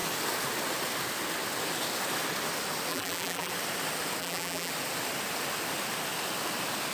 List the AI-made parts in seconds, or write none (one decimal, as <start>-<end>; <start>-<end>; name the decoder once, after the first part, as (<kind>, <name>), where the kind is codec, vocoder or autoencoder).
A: 2.9-3.5 (vocoder, BigVGAN v2); 4.2-4.7